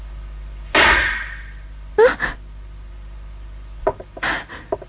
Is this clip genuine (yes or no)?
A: yes